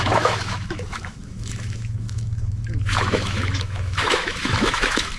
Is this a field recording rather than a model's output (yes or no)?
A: no